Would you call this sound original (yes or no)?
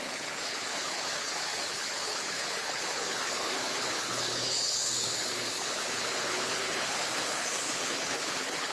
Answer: no